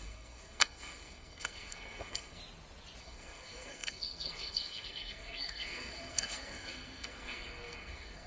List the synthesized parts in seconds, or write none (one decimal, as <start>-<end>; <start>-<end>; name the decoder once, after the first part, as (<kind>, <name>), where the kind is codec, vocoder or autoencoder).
0.0-2.4 (codec, SNAC); 3.0-8.3